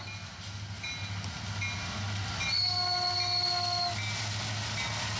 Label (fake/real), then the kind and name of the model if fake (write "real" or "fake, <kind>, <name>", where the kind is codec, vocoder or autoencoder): real